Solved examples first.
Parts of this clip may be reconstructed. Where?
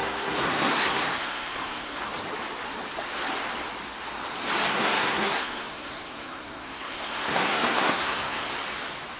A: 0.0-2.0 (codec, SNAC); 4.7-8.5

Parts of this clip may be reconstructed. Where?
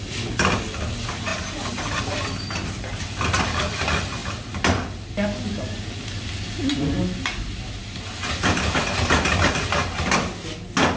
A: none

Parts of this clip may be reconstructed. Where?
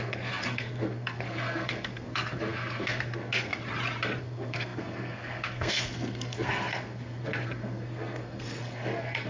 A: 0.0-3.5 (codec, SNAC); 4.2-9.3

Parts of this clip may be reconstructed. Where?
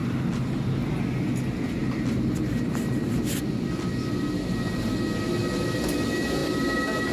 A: none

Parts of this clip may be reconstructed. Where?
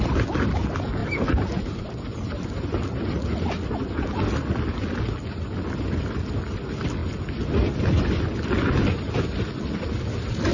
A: none